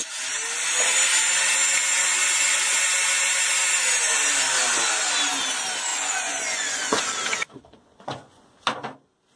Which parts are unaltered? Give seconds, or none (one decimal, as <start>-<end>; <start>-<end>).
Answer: 0.0-1.9; 2.8-5.9; 7.0-7.7; 8.5-9.4